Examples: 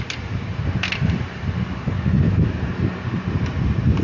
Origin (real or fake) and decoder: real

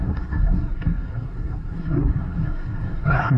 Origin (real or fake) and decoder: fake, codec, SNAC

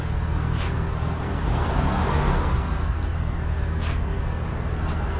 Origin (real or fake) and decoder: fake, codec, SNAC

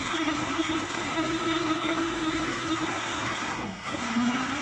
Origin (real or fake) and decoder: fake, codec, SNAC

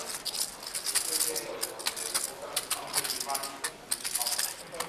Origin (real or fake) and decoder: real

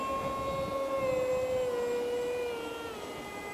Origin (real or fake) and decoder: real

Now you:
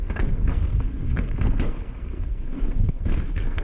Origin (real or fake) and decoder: fake, codec, SNAC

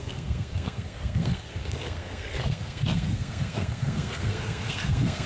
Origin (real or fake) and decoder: fake, codec, SNAC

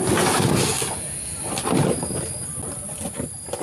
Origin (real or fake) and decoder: real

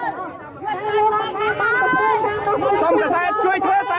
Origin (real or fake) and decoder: real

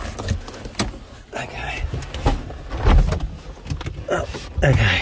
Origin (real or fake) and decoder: real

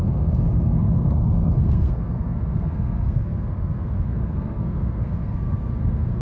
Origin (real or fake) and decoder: fake, codec, SNAC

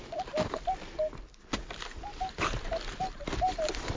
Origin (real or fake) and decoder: real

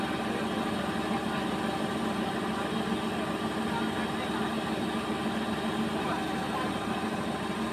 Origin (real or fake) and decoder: real